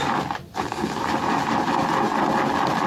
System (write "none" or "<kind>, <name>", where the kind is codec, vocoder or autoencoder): none